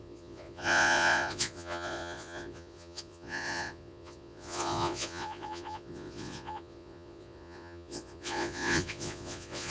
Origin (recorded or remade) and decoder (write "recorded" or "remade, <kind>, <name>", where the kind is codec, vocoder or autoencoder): remade, vocoder, Vocos